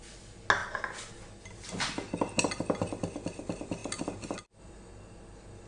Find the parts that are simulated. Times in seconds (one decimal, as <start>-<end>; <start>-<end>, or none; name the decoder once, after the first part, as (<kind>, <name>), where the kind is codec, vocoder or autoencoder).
none